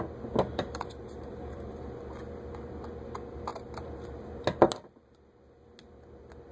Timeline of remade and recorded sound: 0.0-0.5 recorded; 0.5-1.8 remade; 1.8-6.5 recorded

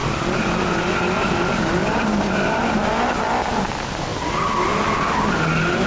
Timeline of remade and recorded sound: 0.0-5.9 recorded

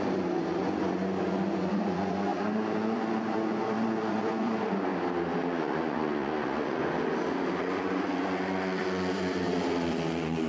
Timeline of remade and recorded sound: 0.0-4.9 remade; 4.9-5.4 recorded; 5.4-6.8 remade; 6.8-7.6 recorded; 7.6-10.5 remade

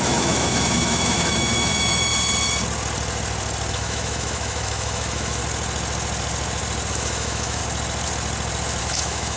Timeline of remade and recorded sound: 0.0-2.1 remade; 2.1-3.7 recorded; 3.7-5.4 remade; 5.4-6.9 recorded; 6.9-7.6 remade; 7.6-8.8 recorded; 8.8-9.4 remade

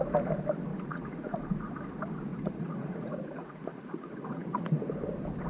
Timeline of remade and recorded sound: 0.0-0.7 recorded; 0.7-1.7 remade; 1.7-2.3 recorded; 2.3-4.8 remade; 4.8-5.5 recorded

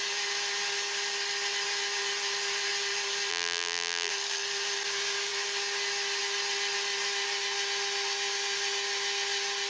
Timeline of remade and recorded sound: 0.0-3.3 recorded; 3.3-4.1 remade; 4.1-9.7 recorded